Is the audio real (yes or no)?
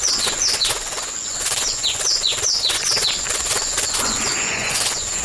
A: no